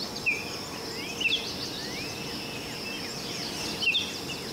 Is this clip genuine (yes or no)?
yes